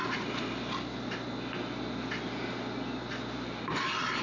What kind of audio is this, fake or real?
real